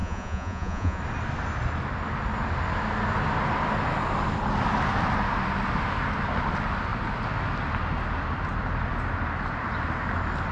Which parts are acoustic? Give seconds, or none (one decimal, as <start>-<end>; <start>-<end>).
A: 1.0-10.5